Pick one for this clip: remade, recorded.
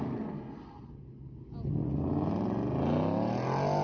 recorded